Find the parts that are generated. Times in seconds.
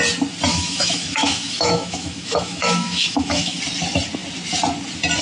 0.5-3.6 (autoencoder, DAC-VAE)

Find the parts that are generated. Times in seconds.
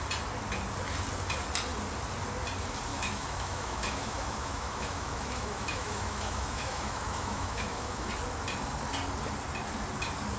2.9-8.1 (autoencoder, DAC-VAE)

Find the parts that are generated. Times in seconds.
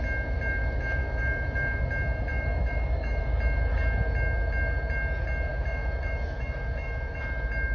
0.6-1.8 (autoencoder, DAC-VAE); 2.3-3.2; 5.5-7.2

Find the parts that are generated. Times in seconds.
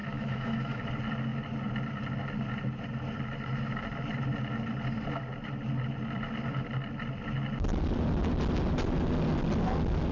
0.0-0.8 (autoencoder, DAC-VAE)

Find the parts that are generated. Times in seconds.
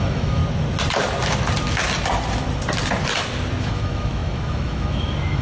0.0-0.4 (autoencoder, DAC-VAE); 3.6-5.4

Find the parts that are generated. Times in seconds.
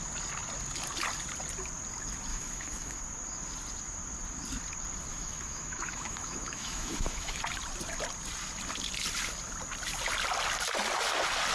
2.3-3.0 (autoencoder, DAC-VAE); 5.1-7.4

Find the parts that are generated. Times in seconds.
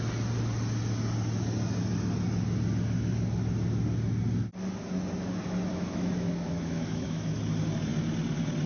5.7-7.4 (autoencoder, DAC-VAE)